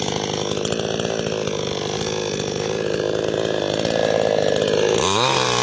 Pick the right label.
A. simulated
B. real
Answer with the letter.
B